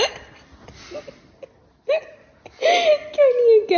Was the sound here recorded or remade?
recorded